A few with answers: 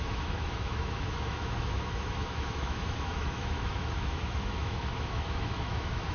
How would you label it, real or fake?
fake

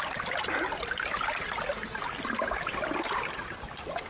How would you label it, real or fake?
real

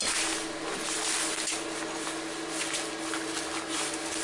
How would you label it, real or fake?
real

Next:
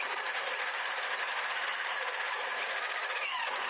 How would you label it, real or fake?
fake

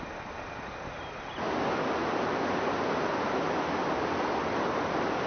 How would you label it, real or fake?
real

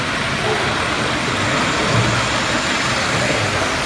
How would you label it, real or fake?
real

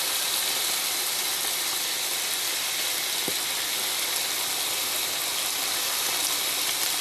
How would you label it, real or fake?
real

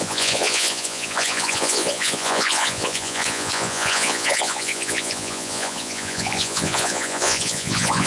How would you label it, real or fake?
fake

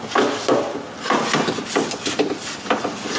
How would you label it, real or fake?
real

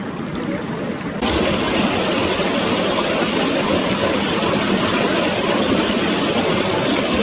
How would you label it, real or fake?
real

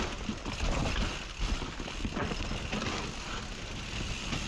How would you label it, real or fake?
real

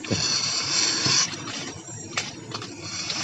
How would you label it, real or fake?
fake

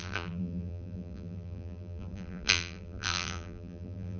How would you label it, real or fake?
fake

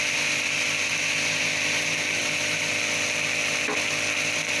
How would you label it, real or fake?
real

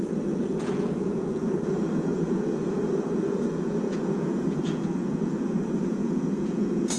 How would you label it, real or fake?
fake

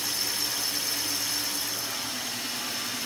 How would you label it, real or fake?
real